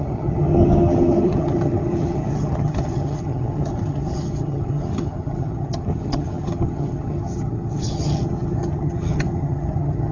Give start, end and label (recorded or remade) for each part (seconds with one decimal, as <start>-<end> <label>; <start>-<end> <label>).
0.0-10.1 remade